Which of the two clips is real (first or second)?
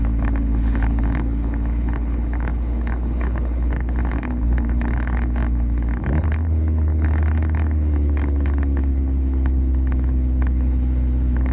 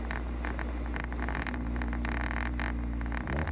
second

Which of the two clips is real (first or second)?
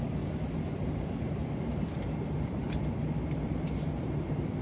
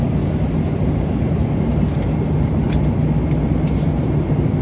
second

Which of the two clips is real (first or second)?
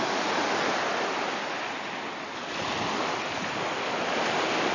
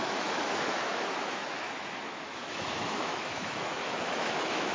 first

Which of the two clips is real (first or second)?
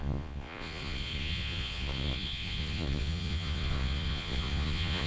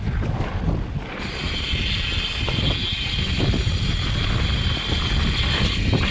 second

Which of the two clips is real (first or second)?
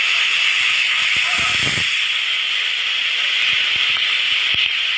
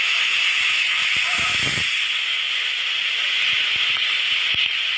second